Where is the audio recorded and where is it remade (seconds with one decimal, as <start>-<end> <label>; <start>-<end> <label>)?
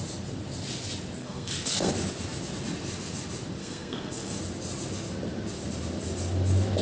0.0-1.2 recorded; 1.2-1.9 remade; 1.9-3.6 recorded; 3.6-4.4 remade; 4.4-6.8 recorded